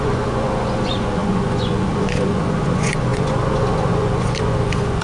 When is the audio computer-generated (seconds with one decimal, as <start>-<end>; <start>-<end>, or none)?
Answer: 0.0-5.0